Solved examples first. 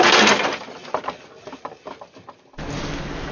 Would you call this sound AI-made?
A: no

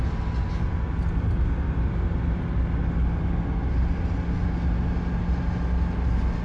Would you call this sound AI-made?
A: no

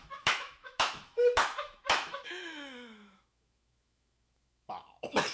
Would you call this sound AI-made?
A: yes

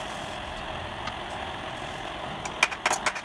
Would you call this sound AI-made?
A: no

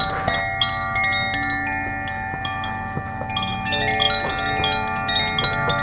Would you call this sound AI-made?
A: no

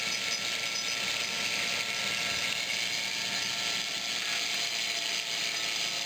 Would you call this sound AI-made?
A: no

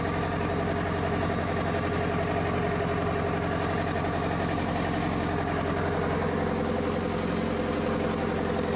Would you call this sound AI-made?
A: no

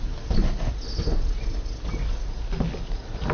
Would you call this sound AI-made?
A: no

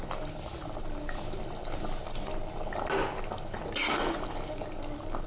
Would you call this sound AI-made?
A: no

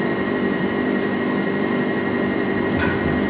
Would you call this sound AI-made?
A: yes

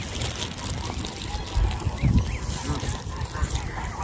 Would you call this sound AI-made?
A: no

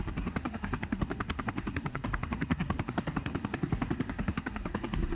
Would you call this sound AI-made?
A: yes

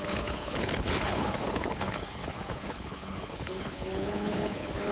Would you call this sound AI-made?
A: yes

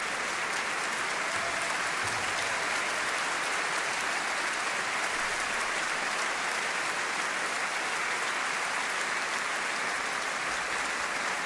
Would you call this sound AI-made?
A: no